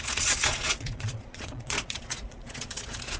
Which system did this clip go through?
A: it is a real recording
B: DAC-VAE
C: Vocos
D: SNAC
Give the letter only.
C